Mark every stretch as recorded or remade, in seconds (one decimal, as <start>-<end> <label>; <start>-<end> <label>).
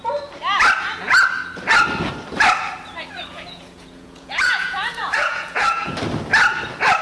0.0-3.3 recorded; 3.3-5.9 remade; 5.9-7.0 recorded